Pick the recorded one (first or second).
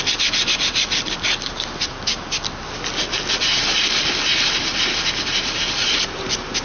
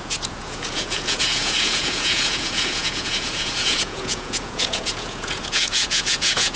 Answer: first